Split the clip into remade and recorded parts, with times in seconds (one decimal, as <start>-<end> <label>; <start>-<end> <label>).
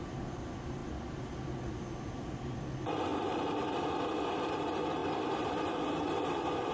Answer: 0.0-5.0 recorded; 5.0-5.6 remade; 5.6-6.7 recorded